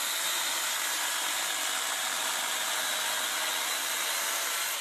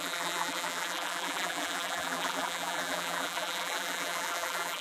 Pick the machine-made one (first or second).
second